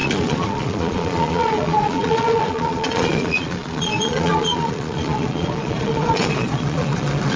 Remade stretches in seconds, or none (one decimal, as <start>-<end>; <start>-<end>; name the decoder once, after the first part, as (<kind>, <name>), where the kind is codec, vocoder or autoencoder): 0.0-7.4 (vocoder, Vocos)